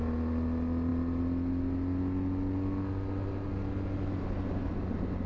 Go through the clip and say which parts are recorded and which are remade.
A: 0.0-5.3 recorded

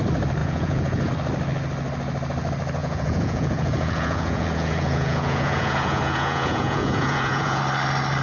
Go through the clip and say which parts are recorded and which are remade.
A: 0.0-0.4 recorded; 0.4-1.1 remade; 1.1-2.8 recorded; 2.8-7.6 remade; 7.6-8.2 recorded

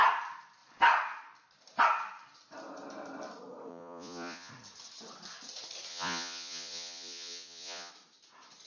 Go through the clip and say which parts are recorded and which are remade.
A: 0.0-3.7 recorded; 3.7-4.5 remade; 4.5-5.9 recorded; 5.9-7.9 remade; 7.9-8.7 recorded

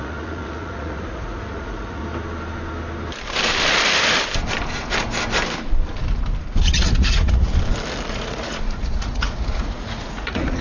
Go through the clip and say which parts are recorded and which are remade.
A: 0.0-2.0 remade; 2.0-6.6 recorded; 6.6-7.5 remade; 7.5-8.1 recorded; 8.1-10.6 remade

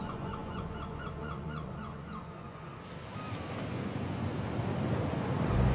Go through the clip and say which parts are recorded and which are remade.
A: 0.0-2.7 remade; 2.7-3.7 recorded; 3.7-4.3 remade; 4.3-5.1 recorded; 5.1-5.7 remade

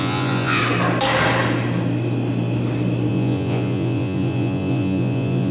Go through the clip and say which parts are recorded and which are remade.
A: 0.0-0.6 remade; 0.6-3.1 recorded; 3.1-5.5 remade

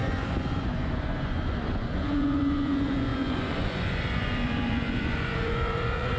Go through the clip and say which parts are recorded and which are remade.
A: 0.0-6.2 remade